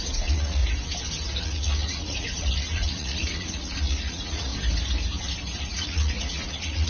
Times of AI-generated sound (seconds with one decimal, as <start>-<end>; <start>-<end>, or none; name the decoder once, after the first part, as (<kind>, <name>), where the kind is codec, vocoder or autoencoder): 0.0-0.6 (vocoder, Vocos); 1.4-4.5; 5.6-6.9

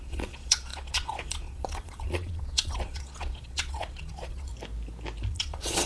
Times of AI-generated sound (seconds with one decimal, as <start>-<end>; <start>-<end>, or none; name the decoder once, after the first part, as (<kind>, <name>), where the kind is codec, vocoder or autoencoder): 0.0-4.5 (vocoder, Vocos); 5.3-5.9